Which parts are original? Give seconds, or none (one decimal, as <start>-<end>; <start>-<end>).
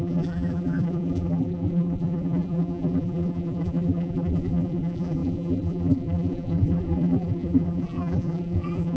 none